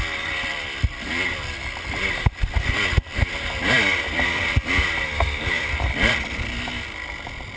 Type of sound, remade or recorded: remade